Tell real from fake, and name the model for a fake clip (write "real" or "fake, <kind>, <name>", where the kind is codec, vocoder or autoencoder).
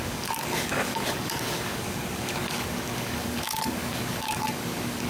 fake, codec, DAC